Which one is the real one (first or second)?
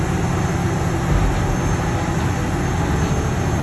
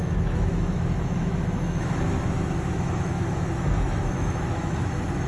first